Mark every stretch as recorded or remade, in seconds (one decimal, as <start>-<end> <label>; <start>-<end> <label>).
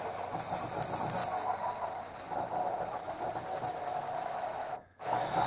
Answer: 0.0-4.6 recorded; 4.6-5.5 remade